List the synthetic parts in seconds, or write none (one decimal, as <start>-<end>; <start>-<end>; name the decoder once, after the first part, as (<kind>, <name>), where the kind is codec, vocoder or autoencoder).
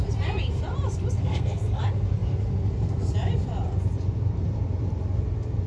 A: 1.2-1.8 (codec, SNAC)